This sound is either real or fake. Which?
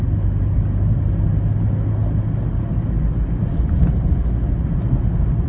real